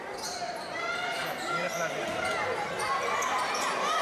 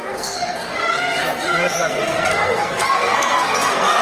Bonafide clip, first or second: first